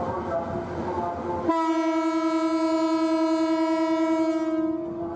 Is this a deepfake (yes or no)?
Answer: no